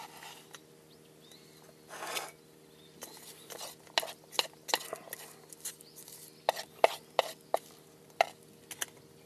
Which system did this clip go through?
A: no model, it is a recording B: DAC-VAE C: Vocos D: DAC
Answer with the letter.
A